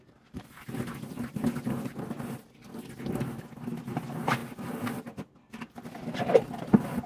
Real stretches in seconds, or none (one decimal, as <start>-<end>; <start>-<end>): 0.0-7.1

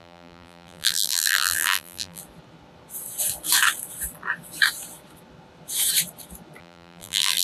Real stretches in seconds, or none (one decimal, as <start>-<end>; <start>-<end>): 2.2-6.6

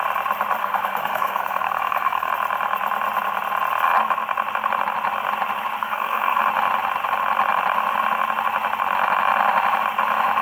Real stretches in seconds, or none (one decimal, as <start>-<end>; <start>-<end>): 0.0-0.6; 2.3-5.8; 6.4-10.4